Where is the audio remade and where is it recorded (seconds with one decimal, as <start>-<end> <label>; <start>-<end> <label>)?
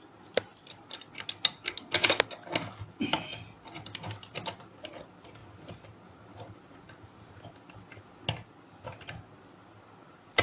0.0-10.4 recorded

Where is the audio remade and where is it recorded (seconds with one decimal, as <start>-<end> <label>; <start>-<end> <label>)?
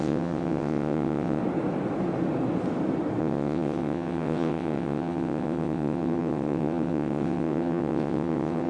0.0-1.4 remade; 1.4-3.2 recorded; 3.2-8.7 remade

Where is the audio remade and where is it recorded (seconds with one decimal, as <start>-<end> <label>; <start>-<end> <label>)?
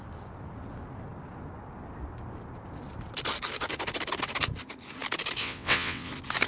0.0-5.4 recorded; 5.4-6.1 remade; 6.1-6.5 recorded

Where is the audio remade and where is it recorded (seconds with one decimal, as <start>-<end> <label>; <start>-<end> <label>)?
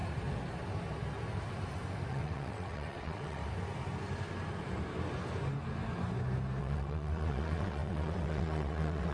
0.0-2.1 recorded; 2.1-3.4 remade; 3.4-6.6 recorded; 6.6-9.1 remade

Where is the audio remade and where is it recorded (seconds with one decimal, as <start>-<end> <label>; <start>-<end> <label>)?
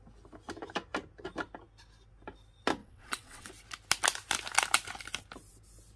0.0-2.8 recorded; 2.8-3.5 remade; 3.5-6.0 recorded